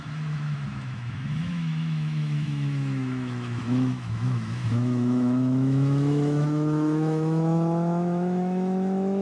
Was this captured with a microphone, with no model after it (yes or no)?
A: no